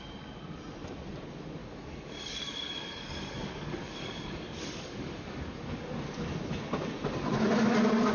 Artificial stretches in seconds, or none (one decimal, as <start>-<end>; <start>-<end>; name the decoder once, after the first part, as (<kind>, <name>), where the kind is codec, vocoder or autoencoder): 1.6-5.8 (codec, DAC)